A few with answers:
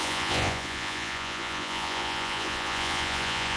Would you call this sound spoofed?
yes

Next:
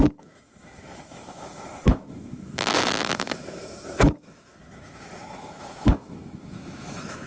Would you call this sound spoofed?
yes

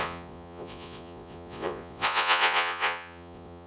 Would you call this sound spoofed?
yes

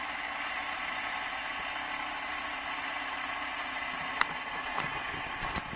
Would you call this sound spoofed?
no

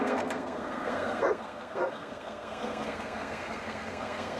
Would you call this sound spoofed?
yes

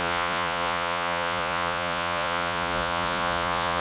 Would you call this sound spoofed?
yes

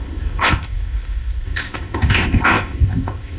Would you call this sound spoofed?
yes